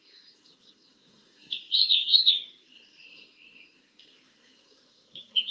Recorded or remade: remade